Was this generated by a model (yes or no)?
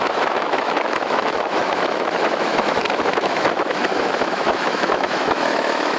yes